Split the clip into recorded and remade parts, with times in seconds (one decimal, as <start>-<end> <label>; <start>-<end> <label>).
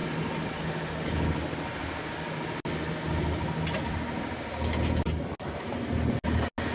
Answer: 0.0-6.7 recorded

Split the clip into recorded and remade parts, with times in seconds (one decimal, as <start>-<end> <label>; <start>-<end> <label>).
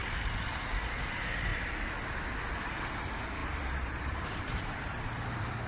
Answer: 0.0-0.5 recorded; 0.5-1.5 remade; 1.5-2.7 recorded; 2.7-5.7 remade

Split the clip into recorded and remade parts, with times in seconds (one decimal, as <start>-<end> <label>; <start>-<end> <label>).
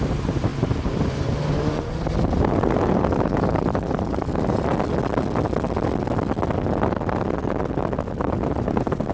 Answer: 0.0-4.7 remade; 4.7-8.1 recorded; 8.1-9.1 remade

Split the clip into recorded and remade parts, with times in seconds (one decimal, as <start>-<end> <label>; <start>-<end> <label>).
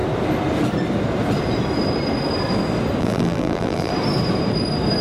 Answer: 0.0-3.0 recorded; 3.0-3.9 remade; 3.9-5.0 recorded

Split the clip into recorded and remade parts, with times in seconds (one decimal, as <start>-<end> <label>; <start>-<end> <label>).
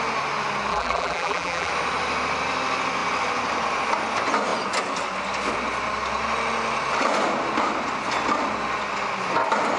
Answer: 0.0-0.7 recorded; 0.7-1.7 remade; 1.7-9.8 recorded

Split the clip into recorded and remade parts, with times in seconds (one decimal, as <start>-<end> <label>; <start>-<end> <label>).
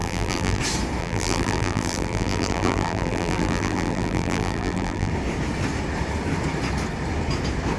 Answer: 0.0-0.6 remade; 0.6-1.0 recorded; 1.0-5.1 remade; 5.1-7.8 recorded